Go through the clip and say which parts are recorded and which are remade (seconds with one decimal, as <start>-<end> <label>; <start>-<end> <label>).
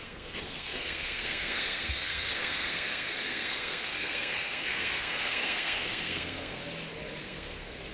0.0-6.6 remade; 6.6-7.2 recorded; 7.2-7.9 remade